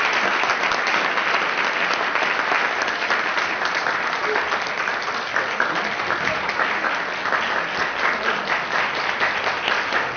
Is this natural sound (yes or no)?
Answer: yes